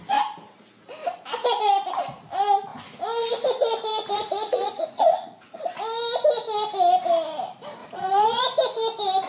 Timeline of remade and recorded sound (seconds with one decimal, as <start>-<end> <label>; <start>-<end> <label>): 0.0-3.9 recorded; 3.9-5.6 remade; 5.6-7.8 recorded; 7.8-8.4 remade; 8.4-9.3 recorded